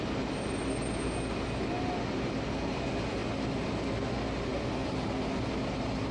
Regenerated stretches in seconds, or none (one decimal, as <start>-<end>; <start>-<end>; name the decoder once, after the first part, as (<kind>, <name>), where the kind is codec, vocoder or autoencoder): none